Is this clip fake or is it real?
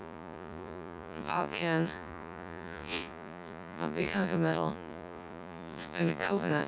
fake